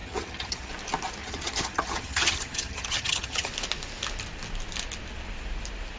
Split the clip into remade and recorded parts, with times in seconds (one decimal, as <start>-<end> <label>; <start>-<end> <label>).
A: 0.0-0.7 remade; 0.7-1.2 recorded; 1.2-3.5 remade; 3.5-6.0 recorded